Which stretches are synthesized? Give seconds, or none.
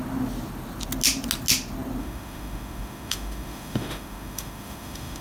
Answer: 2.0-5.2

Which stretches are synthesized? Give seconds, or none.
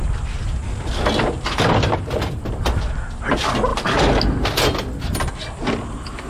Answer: none